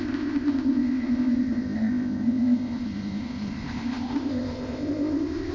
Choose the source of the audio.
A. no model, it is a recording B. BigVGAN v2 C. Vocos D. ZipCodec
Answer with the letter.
D